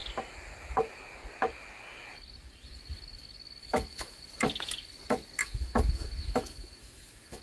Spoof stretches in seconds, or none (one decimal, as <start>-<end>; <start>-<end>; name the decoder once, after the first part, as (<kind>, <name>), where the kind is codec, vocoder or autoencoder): 3.6-4.2 (autoencoder, DAC-VAE); 5.4-7.4